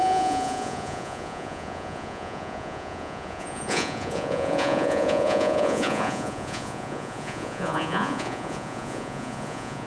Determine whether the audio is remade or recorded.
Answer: remade